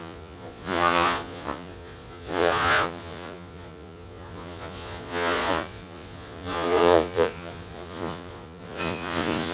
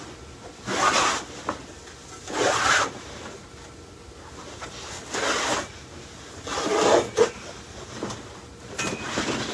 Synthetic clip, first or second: first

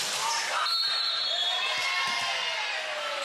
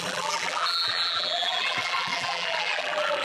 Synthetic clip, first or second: second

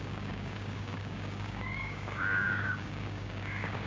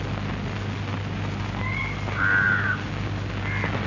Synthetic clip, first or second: first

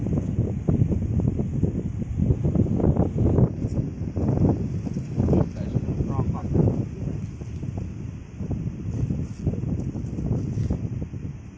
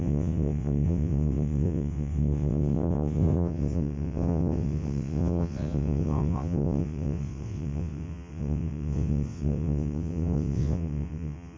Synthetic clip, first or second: second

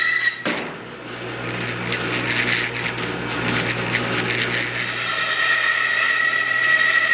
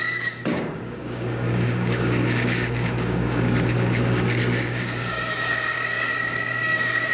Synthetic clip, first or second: second